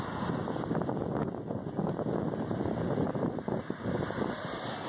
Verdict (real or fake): real